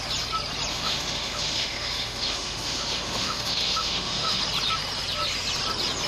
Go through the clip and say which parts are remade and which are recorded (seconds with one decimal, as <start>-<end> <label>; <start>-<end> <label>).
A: 0.0-0.7 recorded; 0.7-4.4 remade; 4.4-6.1 recorded